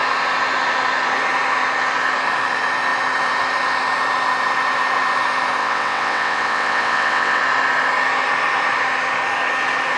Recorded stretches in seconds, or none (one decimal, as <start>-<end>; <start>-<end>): 0.0-5.6; 7.4-10.0